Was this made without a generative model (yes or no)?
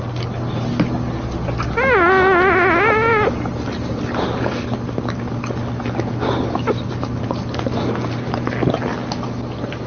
yes